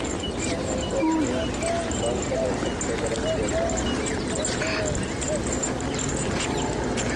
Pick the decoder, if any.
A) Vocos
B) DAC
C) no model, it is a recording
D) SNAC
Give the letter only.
C